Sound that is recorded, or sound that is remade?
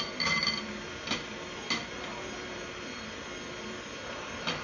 remade